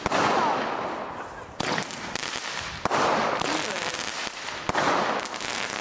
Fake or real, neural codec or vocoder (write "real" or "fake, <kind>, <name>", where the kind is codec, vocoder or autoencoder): real